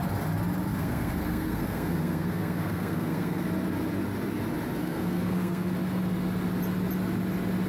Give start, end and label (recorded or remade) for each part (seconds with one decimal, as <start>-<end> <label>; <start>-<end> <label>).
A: 0.0-0.7 recorded; 0.7-3.5 remade; 3.5-4.8 recorded; 4.8-5.7 remade; 5.7-7.7 recorded